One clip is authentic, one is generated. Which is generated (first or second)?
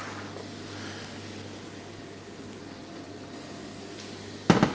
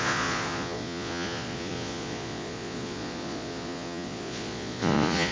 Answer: second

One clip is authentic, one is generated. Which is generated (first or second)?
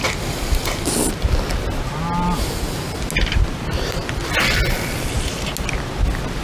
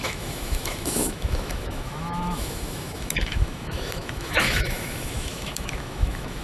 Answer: second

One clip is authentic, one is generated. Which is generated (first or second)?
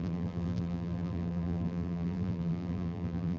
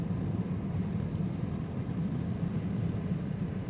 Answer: first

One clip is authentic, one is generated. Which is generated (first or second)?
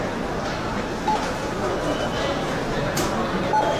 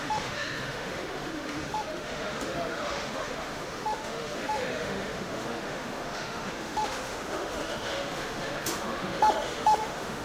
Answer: second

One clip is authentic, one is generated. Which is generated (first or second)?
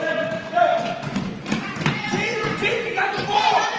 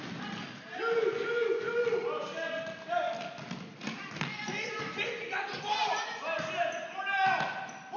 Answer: first